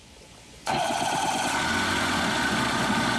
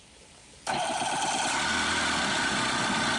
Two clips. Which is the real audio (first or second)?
second